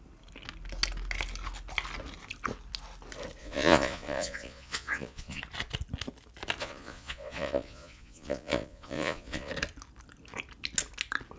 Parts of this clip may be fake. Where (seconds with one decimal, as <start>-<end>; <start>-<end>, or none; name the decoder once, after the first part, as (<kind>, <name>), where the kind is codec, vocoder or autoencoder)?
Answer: 3.4-5.4 (vocoder, Vocos); 6.6-9.5